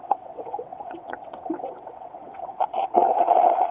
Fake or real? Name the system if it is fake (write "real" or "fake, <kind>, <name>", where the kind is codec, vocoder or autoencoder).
fake, vocoder, WaveNeXt